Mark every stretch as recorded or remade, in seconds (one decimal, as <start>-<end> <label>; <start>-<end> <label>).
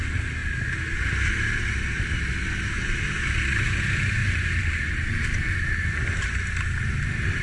0.0-4.2 recorded; 4.2-5.7 remade; 5.7-7.4 recorded